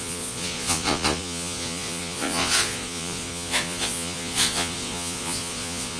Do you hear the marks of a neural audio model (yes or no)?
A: yes